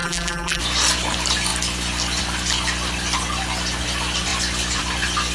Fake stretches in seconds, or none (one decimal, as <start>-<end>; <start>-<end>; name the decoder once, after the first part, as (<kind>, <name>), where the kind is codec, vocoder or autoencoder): 0.0-0.6 (vocoder, BigVGAN v2)